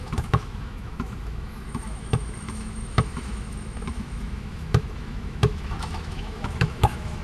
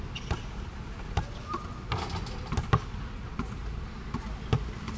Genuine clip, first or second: second